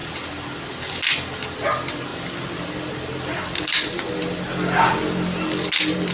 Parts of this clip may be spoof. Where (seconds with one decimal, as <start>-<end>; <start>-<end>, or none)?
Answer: none

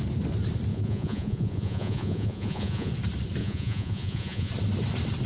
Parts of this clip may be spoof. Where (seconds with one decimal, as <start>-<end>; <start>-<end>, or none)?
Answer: 0.7-2.9; 3.4-4.5

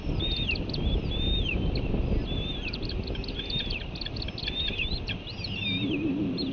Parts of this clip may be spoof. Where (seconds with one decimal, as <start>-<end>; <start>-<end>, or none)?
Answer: none

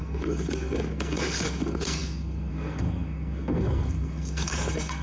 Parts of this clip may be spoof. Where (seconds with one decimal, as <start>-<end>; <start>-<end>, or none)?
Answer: 0.0-5.0